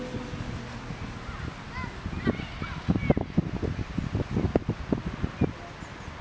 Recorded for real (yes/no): yes